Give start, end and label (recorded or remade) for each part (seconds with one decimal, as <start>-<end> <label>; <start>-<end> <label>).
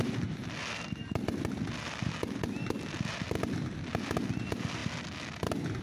0.0-5.8 recorded